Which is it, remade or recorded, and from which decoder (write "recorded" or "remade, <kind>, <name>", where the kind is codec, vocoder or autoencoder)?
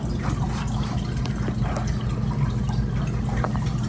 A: recorded